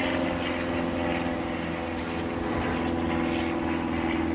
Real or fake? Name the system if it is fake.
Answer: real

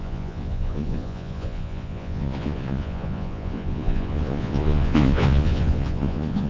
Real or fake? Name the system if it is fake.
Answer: fake, vocoder, Vocos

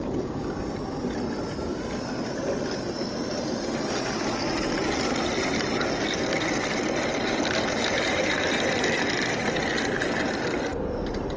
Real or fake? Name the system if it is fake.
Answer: real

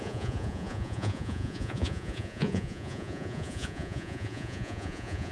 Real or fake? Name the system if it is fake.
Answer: fake, vocoder, Vocos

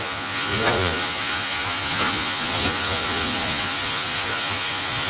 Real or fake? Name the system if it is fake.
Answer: fake, vocoder, Vocos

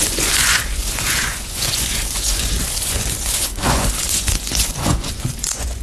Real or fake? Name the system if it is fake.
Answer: fake, vocoder, Vocos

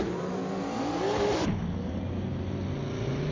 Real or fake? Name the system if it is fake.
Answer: real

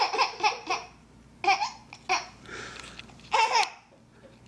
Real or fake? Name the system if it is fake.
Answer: real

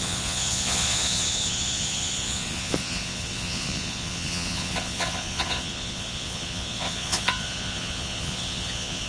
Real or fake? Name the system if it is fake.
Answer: fake, vocoder, Vocos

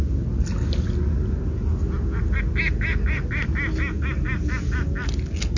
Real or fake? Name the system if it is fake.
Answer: real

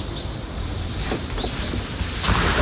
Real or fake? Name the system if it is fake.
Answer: real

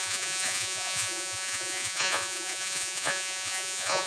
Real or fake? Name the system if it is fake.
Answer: fake, vocoder, Vocos